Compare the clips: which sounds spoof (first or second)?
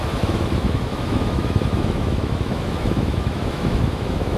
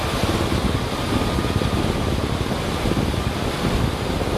first